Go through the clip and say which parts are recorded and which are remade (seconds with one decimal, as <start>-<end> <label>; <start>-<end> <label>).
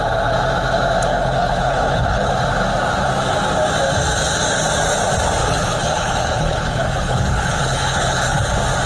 0.0-1.1 recorded; 1.1-2.3 remade; 2.3-5.4 recorded; 5.4-8.5 remade; 8.5-8.9 recorded